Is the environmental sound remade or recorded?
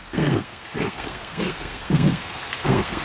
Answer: remade